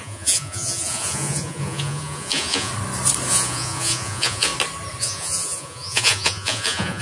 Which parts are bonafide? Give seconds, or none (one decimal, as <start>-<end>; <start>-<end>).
2.7-3.3; 4.5-5.0